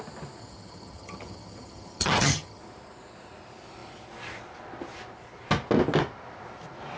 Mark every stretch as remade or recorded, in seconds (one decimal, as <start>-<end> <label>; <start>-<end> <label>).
0.0-0.4 recorded; 0.4-2.6 remade; 2.6-7.0 recorded